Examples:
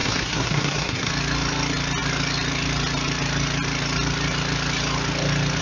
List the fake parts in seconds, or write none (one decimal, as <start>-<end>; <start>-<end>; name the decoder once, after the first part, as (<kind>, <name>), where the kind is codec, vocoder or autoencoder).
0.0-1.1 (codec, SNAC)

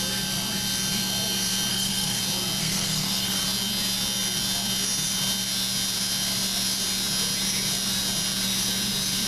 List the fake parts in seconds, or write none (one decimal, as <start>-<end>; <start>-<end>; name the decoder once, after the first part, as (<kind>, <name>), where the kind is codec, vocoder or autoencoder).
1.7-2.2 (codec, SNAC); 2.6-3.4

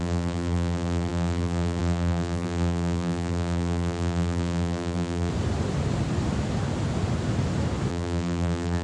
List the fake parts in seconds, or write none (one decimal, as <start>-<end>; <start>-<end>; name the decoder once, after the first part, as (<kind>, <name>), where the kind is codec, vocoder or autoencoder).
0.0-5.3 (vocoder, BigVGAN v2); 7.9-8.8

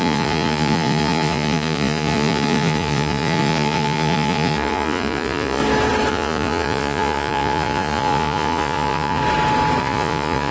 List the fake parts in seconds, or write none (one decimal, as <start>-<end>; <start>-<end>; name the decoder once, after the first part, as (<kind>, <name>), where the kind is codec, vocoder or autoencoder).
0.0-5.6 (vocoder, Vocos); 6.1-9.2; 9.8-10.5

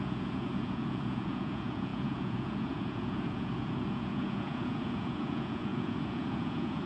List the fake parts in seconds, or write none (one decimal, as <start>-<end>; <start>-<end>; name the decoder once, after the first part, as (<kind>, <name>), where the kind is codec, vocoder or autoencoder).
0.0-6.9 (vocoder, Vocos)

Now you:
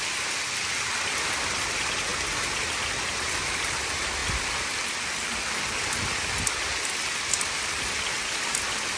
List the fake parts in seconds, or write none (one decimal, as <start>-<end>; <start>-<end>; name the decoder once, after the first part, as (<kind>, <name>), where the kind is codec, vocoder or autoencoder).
none